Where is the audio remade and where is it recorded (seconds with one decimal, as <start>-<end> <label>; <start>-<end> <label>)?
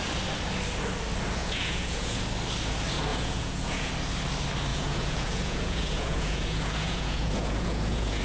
0.0-1.4 recorded; 1.4-2.2 remade; 2.2-3.1 recorded; 3.1-3.9 remade; 3.9-4.7 recorded; 4.7-8.2 remade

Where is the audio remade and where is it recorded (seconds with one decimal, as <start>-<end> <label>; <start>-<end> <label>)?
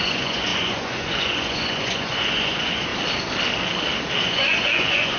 0.0-2.9 remade; 2.9-4.2 recorded; 4.2-5.2 remade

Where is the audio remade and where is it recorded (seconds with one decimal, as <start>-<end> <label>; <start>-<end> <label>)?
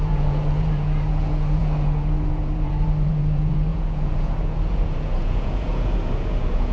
0.0-6.7 remade